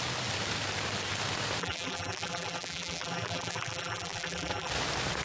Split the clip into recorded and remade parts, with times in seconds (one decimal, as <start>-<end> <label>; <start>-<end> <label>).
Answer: 0.0-1.6 recorded; 1.6-4.7 remade; 4.7-5.2 recorded